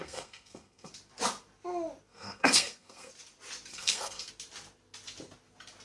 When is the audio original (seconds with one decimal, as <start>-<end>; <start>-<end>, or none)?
0.9-2.1; 3.1-3.7; 4.3-5.8

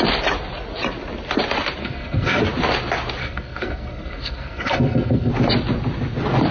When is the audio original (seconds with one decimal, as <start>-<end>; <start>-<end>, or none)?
0.0-1.8; 2.4-3.2; 5.3-6.5